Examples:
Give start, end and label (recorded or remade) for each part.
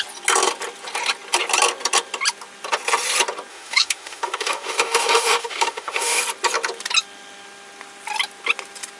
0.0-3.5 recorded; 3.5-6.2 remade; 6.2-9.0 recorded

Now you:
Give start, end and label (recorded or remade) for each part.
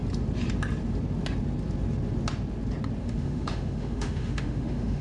0.0-3.0 recorded; 3.0-5.0 remade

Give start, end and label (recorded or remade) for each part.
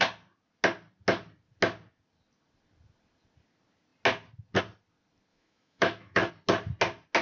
0.0-5.3 recorded; 5.3-6.3 remade; 6.3-7.2 recorded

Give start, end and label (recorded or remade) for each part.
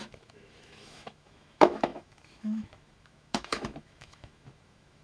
0.0-5.0 remade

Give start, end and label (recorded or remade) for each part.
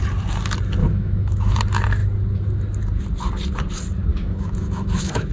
0.0-0.8 recorded; 0.8-1.6 remade; 1.6-4.1 recorded; 4.1-5.3 remade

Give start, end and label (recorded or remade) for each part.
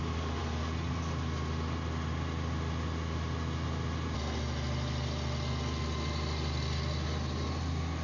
0.0-8.0 recorded